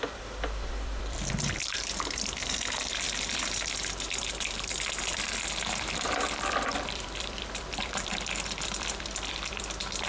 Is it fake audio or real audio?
fake